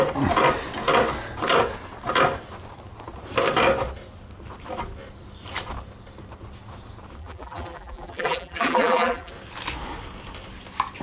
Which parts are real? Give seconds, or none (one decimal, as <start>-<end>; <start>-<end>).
0.0-7.2; 9.3-11.0